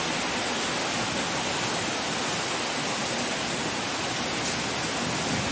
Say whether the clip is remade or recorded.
recorded